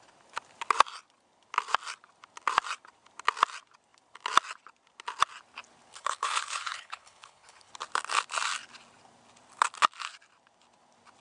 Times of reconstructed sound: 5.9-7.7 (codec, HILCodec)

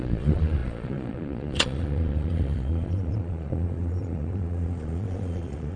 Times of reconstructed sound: 0.0-5.8 (vocoder, Vocos)

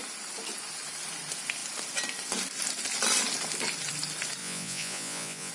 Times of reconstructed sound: 4.4-5.5 (vocoder, Vocos)

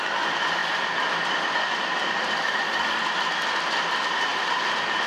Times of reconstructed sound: none

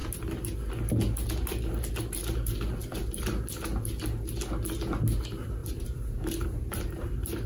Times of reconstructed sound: 0.0-0.6 (vocoder, BigVGAN v2); 5.6-7.5

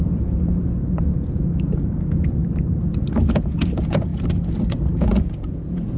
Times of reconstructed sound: 0.0-2.4 (vocoder, Vocos); 3.3-4.1; 5.0-6.0